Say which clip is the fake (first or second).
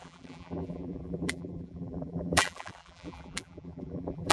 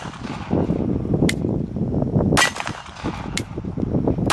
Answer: first